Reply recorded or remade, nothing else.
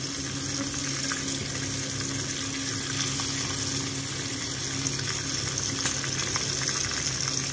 recorded